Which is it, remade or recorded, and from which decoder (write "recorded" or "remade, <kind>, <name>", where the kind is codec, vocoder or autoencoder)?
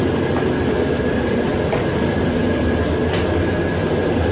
recorded